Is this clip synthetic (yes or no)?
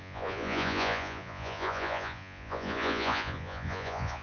yes